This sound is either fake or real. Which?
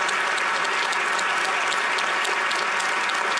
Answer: real